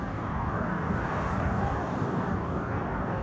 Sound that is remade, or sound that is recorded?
remade